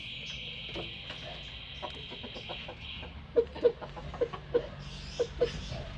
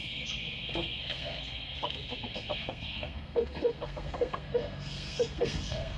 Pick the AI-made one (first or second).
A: second